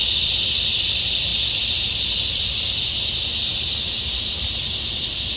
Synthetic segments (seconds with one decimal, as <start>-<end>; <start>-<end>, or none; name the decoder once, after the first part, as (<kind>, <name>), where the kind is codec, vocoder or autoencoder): 0.0-3.5 (vocoder, BigVGAN v2); 4.9-5.4